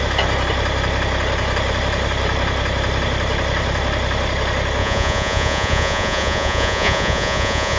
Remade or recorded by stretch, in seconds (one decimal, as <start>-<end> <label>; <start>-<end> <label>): 0.0-4.8 recorded; 4.8-7.8 remade